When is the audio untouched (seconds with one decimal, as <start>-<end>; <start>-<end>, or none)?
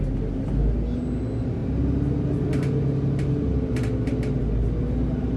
0.0-5.4